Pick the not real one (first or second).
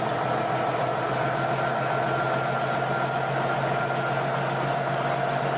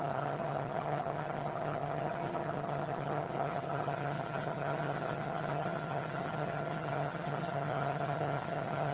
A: second